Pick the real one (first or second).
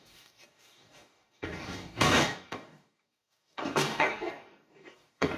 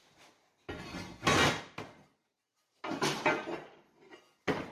second